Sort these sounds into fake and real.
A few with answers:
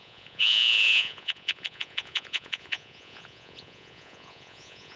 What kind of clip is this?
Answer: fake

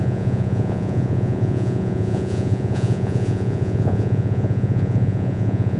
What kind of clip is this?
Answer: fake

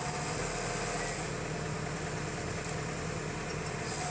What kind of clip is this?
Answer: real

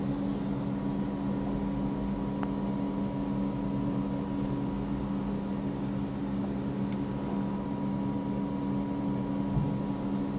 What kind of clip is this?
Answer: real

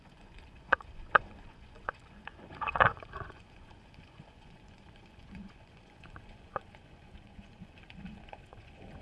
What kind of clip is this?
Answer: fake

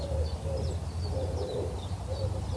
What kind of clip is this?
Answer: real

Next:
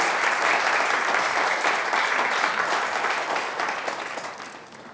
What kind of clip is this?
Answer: real